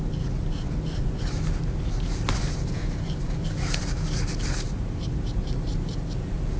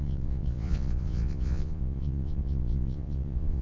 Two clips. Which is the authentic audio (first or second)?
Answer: first